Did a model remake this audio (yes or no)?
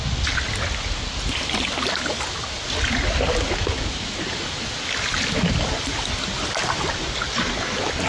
no